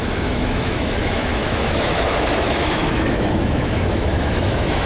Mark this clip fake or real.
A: fake